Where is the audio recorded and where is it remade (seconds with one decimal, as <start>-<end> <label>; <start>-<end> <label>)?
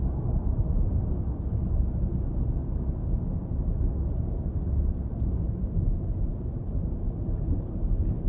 0.0-8.3 recorded